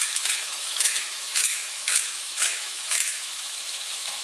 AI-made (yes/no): yes